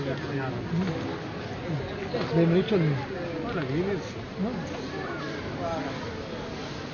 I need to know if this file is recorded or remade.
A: recorded